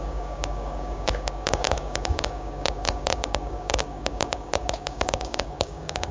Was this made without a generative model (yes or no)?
no